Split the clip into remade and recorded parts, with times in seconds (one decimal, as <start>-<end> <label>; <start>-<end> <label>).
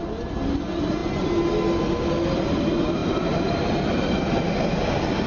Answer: 0.0-5.3 recorded